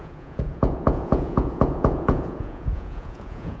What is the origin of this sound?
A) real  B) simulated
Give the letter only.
B